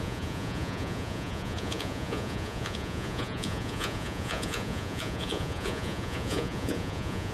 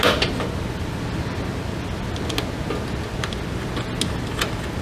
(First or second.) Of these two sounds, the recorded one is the second